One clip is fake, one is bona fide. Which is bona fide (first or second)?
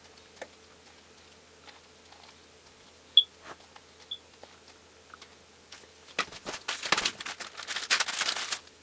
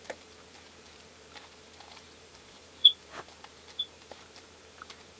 first